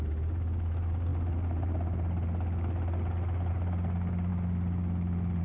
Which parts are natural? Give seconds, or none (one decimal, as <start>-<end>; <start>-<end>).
0.0-5.4